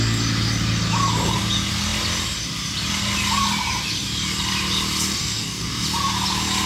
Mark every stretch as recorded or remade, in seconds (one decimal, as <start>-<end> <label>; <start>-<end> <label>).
0.0-5.2 recorded; 5.2-5.7 remade; 5.7-6.7 recorded